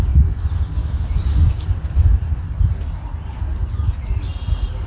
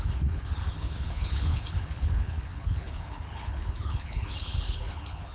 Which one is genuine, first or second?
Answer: first